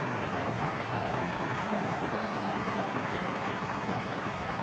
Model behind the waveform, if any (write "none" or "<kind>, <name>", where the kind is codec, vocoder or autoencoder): codec, SNAC